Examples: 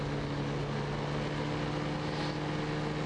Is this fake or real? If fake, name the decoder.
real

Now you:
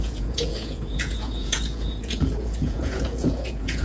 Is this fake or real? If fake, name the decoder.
fake, vocoder, Vocos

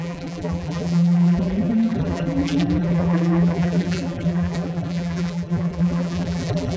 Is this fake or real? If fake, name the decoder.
fake, vocoder, BigVGAN v2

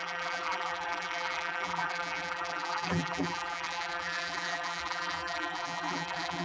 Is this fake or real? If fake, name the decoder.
fake, vocoder, BigVGAN v2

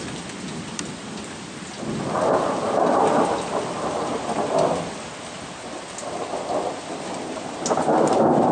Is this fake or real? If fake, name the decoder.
real